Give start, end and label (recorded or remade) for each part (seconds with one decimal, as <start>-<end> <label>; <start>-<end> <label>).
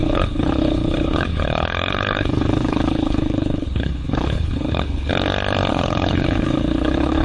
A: 0.0-5.1 remade; 5.1-5.7 recorded; 5.7-7.2 remade